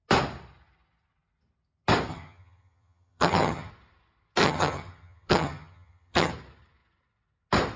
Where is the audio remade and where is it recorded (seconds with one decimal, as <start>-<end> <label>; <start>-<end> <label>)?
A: 0.0-2.1 recorded; 2.1-3.7 remade; 3.7-4.4 recorded; 4.4-6.3 remade; 6.3-7.8 recorded